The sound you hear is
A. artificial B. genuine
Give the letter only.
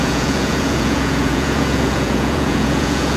A